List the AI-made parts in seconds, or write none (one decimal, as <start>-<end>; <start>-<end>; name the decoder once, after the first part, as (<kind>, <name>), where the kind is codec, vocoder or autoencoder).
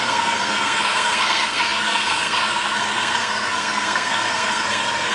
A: 0.0-5.1 (codec, SNAC)